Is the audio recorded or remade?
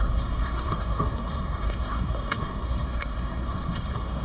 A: remade